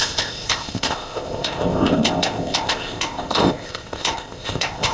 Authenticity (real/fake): fake